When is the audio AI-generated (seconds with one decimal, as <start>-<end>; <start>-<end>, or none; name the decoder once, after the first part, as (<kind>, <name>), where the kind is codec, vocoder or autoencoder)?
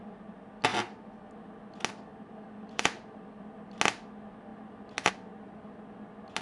2.1-3.7 (vocoder, BigVGAN v2)